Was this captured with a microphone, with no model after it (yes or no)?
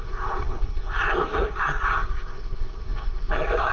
no